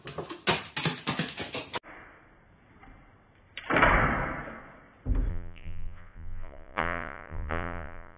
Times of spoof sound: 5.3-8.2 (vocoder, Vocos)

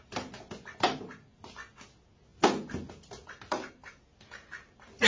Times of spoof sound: none

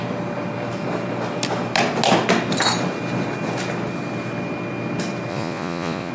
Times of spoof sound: 5.3-6.1 (vocoder, Vocos)

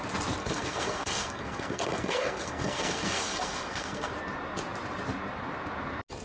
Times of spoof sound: 0.4-4.1 (codec, SNAC)

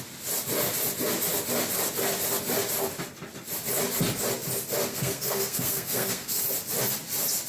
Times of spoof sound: 4.9-6.4 (codec, SNAC)

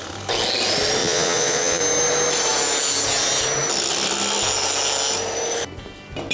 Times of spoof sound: 1.0-1.8 (vocoder, Vocos)